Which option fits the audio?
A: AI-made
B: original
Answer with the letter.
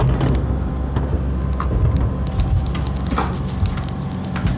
B